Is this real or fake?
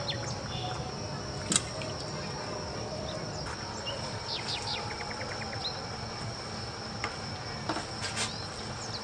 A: real